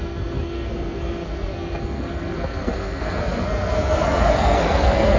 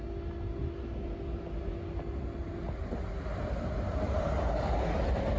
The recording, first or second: second